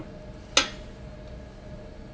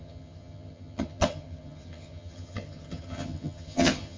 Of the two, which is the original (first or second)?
first